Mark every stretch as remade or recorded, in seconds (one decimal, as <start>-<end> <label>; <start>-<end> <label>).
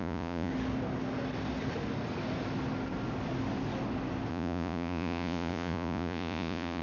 0.0-0.5 remade; 0.5-4.3 recorded; 4.3-6.8 remade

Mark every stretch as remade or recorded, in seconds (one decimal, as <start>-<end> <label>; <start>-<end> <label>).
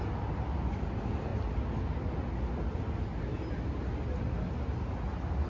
0.0-5.5 recorded